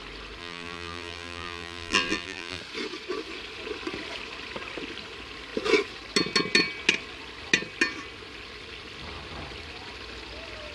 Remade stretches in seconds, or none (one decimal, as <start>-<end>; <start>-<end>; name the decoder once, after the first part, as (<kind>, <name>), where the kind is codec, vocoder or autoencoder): 0.4-2.6 (vocoder, BigVGAN v2)